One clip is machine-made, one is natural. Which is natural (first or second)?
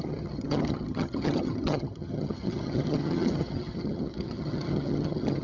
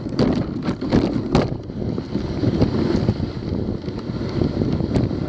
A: second